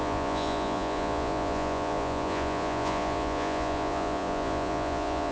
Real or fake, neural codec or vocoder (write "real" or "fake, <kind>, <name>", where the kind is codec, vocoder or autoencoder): fake, vocoder, Vocos